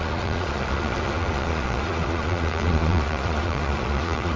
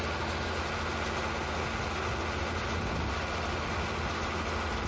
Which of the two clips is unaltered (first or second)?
second